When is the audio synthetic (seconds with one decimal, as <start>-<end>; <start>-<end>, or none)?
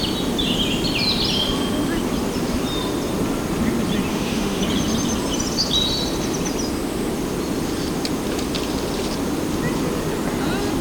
4.1-4.6